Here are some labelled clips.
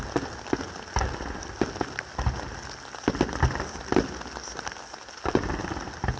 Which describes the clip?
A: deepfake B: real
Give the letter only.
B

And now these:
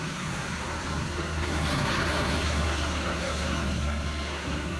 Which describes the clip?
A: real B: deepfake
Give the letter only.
B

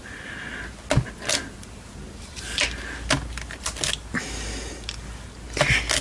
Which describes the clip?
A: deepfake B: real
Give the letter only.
B